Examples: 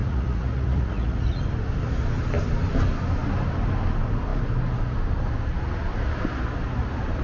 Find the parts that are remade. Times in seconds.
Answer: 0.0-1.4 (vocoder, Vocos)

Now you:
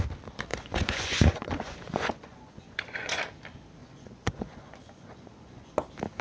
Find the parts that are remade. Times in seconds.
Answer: 0.5-3.2 (vocoder, Vocos); 3.8-5.7

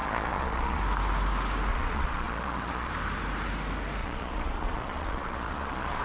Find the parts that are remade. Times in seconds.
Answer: 0.0-0.8 (vocoder, Vocos); 1.7-2.9; 4.0-6.0

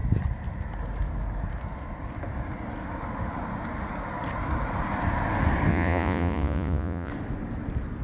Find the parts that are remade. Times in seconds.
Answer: 5.7-7.1 (vocoder, Vocos)

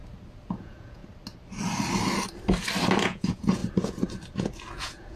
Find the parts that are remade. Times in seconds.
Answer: 0.6-1.0 (vocoder, Vocos); 3.0-3.6; 4.7-5.2

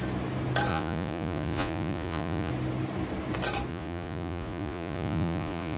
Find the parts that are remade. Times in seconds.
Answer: 0.7-2.5 (vocoder, Vocos); 3.7-5.8